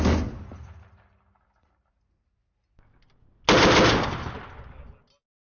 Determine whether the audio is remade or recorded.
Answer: recorded